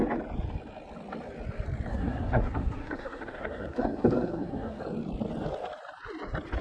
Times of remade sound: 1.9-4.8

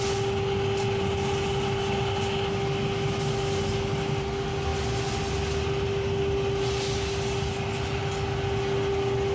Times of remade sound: none